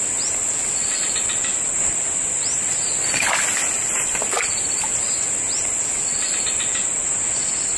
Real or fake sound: real